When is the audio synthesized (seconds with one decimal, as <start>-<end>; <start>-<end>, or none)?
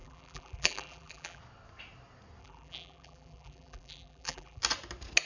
0.0-1.4; 2.4-4.6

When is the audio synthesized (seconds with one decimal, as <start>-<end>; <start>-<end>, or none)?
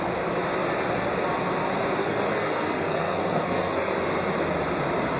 2.0-4.0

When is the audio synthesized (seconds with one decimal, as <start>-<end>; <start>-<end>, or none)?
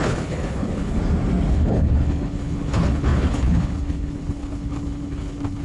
0.0-1.0; 1.5-5.6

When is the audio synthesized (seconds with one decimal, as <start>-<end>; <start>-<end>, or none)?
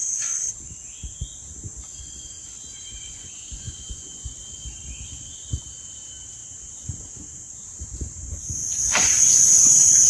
3.0-4.3; 8.6-9.2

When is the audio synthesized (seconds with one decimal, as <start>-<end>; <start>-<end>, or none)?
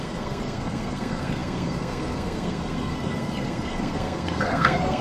0.0-5.0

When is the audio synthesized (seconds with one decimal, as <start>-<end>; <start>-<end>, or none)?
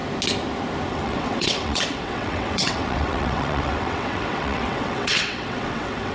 0.9-6.1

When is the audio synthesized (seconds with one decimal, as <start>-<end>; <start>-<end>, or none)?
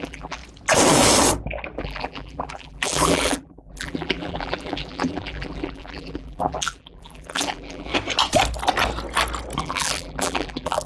0.0-0.4; 1.8-7.9; 9.6-10.9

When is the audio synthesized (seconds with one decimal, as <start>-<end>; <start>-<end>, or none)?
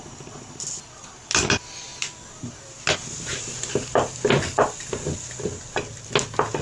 none